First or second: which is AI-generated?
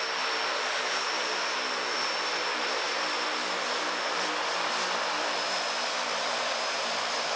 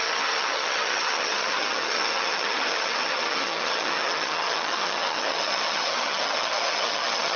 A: second